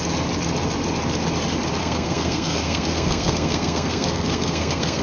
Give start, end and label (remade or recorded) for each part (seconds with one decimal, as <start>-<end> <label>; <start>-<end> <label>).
0.0-1.8 recorded; 1.8-5.0 remade

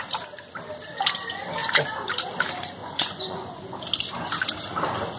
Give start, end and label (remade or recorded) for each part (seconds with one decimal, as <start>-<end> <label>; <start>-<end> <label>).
0.0-2.8 recorded; 2.8-3.8 remade; 3.8-5.2 recorded

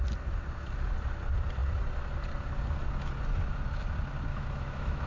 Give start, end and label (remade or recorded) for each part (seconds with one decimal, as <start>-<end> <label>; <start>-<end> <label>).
0.0-4.3 recorded; 4.3-5.1 remade

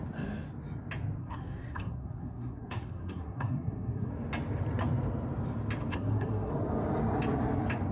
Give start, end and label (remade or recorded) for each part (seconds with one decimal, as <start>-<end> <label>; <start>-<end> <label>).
0.0-1.2 recorded; 1.2-4.1 remade; 4.1-5.9 recorded; 5.9-6.5 remade; 6.5-7.9 recorded

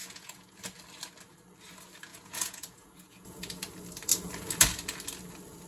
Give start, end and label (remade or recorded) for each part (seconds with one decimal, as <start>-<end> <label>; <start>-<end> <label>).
0.0-0.6 remade; 0.6-2.1 recorded; 2.1-3.4 remade; 3.4-5.7 recorded

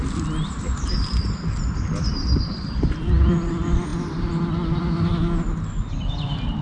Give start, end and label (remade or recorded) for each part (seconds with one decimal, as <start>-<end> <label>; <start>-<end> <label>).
0.0-6.6 recorded